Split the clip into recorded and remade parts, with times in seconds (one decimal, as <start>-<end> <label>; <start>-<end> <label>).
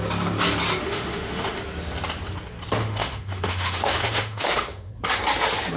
0.0-0.8 recorded; 0.8-1.6 remade; 1.6-2.8 recorded; 2.8-4.9 remade; 4.9-5.8 recorded